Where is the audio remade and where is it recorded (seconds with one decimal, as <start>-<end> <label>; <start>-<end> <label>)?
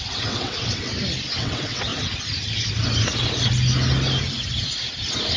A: 0.0-0.9 remade; 0.9-1.4 recorded; 1.4-1.9 remade; 1.9-5.4 recorded